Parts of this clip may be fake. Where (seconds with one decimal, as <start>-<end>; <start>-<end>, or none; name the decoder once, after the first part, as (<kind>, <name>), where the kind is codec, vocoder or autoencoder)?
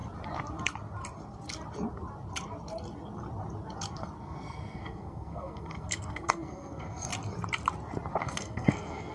4.2-7.1 (codec, SNAC); 8.2-9.1